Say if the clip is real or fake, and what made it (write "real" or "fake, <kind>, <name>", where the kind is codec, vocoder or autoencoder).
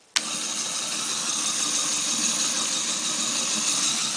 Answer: real